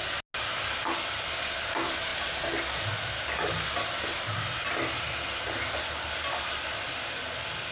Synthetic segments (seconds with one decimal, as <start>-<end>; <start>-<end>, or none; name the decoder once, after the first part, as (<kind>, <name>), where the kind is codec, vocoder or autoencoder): none